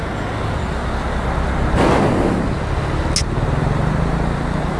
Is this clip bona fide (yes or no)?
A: yes